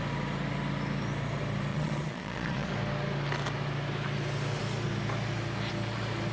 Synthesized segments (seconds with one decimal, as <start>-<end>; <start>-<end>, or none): 1.7-2.7

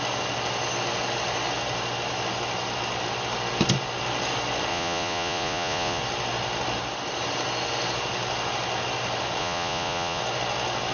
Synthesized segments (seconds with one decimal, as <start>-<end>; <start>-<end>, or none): 4.7-6.0; 9.4-10.2

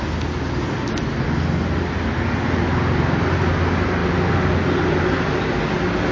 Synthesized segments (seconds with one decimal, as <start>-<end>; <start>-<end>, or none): none

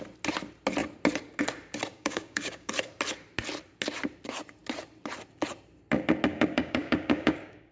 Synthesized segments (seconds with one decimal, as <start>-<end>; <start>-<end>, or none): 1.9-2.7; 6.3-7.7

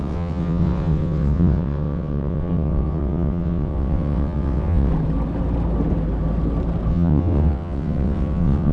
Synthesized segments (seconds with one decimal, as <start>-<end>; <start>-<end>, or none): 0.0-4.9; 6.9-8.7

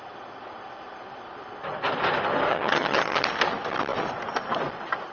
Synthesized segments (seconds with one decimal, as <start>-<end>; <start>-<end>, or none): 2.5-3.2

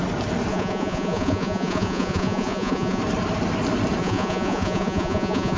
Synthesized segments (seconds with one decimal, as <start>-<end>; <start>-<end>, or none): 0.5-3.0; 4.0-5.6